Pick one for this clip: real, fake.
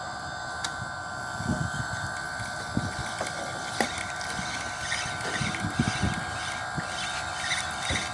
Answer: fake